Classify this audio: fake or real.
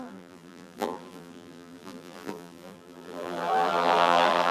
fake